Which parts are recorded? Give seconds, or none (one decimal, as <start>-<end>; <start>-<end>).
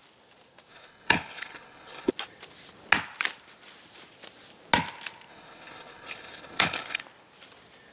0.0-0.7; 2.1-5.3; 7.0-7.9